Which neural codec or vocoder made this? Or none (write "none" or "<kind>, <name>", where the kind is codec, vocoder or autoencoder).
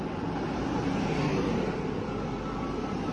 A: none